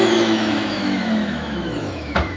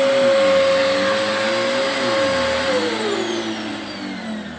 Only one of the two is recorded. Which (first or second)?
second